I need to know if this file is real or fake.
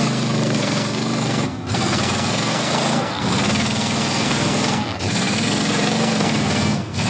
fake